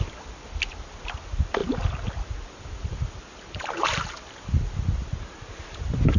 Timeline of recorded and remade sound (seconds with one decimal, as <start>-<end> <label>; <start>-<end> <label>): 0.0-6.2 recorded